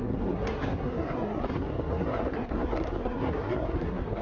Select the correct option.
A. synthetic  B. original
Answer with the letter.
A